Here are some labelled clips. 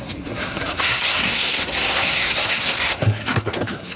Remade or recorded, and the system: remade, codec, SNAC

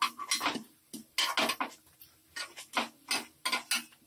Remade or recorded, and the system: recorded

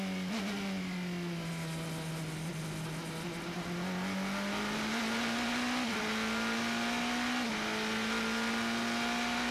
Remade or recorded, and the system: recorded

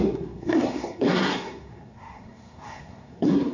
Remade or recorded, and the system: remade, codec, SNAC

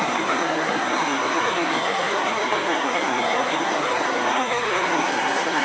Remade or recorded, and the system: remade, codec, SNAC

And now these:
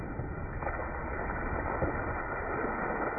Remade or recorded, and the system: recorded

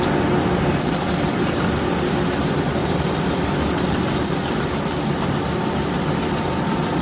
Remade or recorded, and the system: recorded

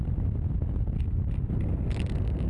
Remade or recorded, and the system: recorded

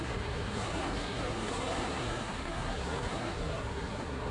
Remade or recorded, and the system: remade, codec, SNAC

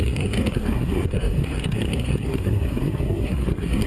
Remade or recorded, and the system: remade, codec, SNAC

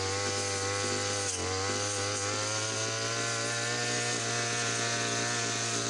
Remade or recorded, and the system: recorded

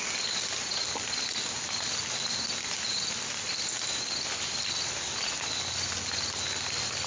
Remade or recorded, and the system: recorded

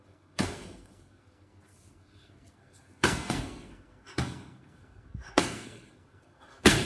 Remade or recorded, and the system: remade, codec, SNAC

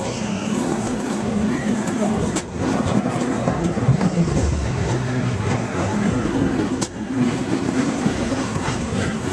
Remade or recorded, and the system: remade, codec, SNAC